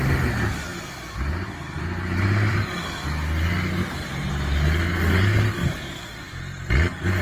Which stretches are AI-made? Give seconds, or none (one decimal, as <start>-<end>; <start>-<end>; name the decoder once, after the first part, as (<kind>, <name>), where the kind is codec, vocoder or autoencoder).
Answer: 0.7-2.8 (vocoder, BigVGAN v2); 3.8-4.3; 5.6-6.2